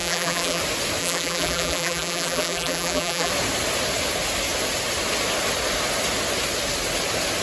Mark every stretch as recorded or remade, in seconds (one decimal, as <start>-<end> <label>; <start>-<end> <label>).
0.0-0.6 remade; 0.6-1.0 recorded; 1.0-3.3 remade; 3.3-7.4 recorded